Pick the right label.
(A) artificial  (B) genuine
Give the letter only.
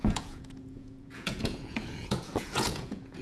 A